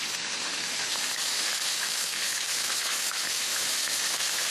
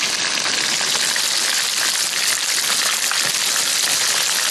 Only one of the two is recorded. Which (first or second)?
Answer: second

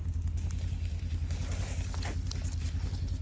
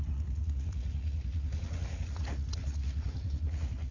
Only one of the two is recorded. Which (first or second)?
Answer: first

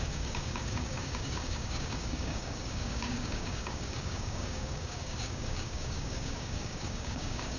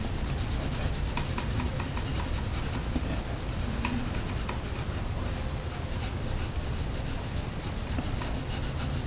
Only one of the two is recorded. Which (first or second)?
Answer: second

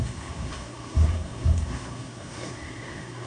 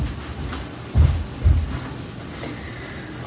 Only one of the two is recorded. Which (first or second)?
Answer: second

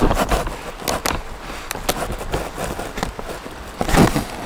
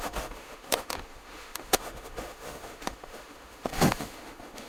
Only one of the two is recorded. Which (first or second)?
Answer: first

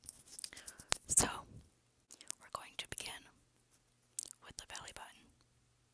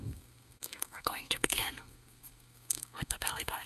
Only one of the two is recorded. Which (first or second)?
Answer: first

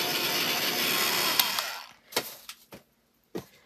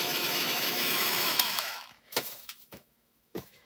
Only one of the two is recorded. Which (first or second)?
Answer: first